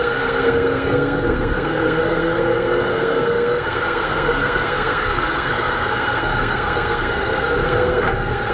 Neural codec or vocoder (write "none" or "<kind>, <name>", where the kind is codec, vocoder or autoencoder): codec, SNAC